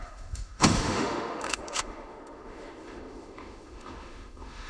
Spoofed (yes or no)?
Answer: yes